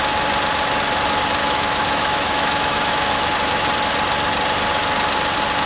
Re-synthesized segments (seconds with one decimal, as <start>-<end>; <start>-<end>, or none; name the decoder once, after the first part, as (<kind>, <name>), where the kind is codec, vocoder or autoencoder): 1.4-3.7 (autoencoder, DAC-VAE)

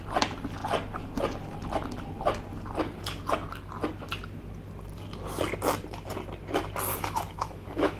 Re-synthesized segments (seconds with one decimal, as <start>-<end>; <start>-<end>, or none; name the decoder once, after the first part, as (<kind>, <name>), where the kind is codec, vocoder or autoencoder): 6.9-8.0 (autoencoder, DAC-VAE)

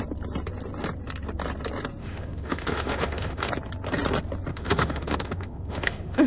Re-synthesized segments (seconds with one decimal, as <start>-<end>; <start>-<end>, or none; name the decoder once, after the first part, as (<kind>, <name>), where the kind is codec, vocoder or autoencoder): 2.0-3.5 (autoencoder, DAC-VAE); 4.5-6.3

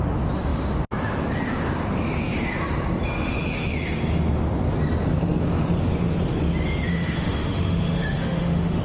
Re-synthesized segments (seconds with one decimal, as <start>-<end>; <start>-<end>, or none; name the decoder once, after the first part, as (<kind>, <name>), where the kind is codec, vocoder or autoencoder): 6.9-8.8 (autoencoder, DAC-VAE)

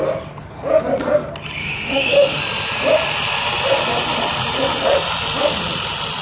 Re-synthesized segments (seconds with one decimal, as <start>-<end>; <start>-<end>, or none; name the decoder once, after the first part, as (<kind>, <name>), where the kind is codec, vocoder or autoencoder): 1.6-2.4 (autoencoder, DAC-VAE)

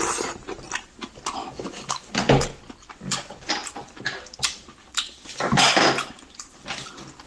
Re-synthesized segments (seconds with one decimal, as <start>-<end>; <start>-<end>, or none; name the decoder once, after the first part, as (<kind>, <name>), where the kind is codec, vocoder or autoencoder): 1.4-2.1 (autoencoder, DAC-VAE)

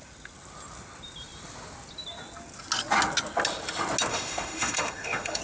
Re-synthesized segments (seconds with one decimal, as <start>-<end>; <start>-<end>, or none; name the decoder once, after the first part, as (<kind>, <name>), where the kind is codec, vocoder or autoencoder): 4.1-5.4 (autoencoder, DAC-VAE)